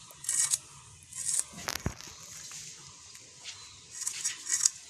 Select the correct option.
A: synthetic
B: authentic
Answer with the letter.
B